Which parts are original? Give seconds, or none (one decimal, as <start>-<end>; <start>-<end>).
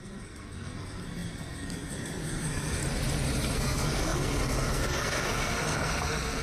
2.8-3.5